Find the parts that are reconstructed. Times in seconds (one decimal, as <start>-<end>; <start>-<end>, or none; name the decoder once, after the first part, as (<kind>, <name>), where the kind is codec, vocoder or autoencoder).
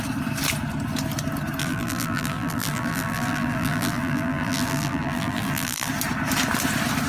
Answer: 1.6-5.9 (vocoder, BigVGAN v2)